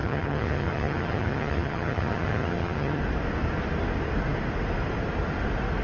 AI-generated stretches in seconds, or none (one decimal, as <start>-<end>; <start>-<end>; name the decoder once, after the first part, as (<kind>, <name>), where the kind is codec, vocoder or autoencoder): 0.0-3.0 (vocoder, HiFi-GAN)